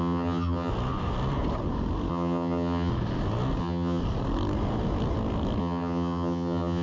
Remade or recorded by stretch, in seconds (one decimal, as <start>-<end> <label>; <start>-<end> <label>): 0.0-0.7 remade; 0.7-2.1 recorded; 2.1-2.9 remade; 2.9-3.6 recorded; 3.6-4.0 remade; 4.0-5.6 recorded; 5.6-6.8 remade